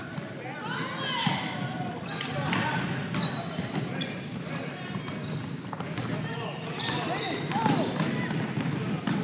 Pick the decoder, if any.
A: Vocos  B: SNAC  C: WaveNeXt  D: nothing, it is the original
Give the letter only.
D